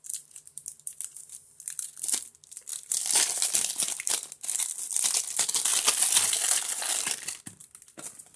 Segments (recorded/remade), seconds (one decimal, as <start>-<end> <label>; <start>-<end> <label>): 0.0-5.7 remade; 5.7-6.7 recorded; 6.7-7.6 remade; 7.6-8.4 recorded